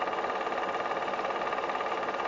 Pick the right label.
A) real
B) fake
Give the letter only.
A